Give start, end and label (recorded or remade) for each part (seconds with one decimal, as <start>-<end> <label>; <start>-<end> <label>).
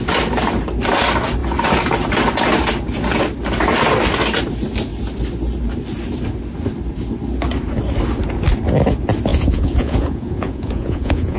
0.0-9.3 recorded; 9.3-11.4 remade